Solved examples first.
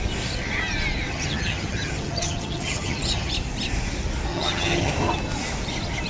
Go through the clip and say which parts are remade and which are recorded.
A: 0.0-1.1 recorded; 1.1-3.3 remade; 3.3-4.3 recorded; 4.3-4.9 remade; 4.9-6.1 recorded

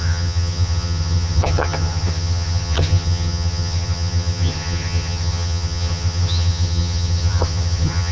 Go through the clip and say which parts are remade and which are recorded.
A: 0.0-8.1 remade